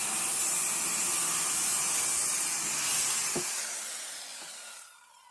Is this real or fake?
real